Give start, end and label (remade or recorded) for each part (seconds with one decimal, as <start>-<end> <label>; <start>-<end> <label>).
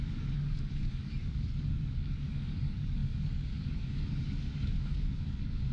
0.0-5.7 remade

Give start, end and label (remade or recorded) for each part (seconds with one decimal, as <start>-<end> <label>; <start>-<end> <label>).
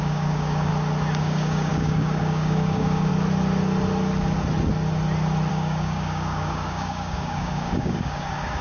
0.0-0.7 remade; 0.7-1.2 recorded; 1.2-3.1 remade; 3.1-5.5 recorded; 5.5-8.6 remade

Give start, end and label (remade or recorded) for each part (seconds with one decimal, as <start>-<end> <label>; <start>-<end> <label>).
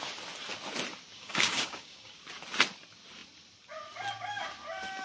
0.0-1.1 recorded; 1.1-2.2 remade; 2.2-5.0 recorded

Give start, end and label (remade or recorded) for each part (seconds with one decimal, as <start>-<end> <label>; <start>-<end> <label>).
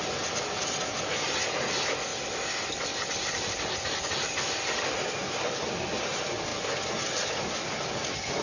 0.0-8.4 recorded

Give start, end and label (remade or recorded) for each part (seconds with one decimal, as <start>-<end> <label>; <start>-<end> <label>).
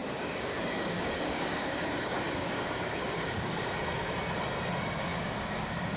0.0-3.6 remade; 3.6-5.1 recorded; 5.1-6.0 remade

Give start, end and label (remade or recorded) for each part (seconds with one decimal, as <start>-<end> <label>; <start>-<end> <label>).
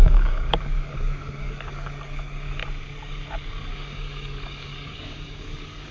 0.0-2.6 remade; 2.6-3.7 recorded; 3.7-5.9 remade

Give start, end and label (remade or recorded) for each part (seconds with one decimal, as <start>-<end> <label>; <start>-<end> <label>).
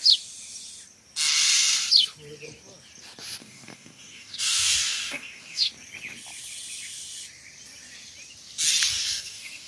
0.0-3.4 recorded; 3.4-5.7 remade; 5.7-8.9 recorded; 8.9-9.7 remade